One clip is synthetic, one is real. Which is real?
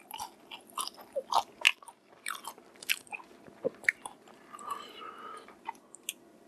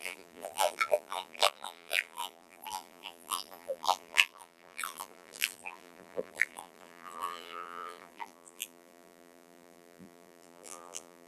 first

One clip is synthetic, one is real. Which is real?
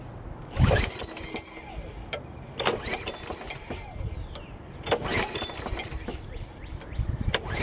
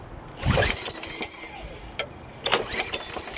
first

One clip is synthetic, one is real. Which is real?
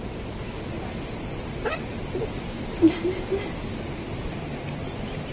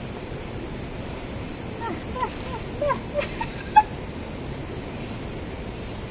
first